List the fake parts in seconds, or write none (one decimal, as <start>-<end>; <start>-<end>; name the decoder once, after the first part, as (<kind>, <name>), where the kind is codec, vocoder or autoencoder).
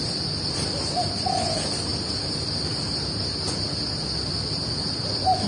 none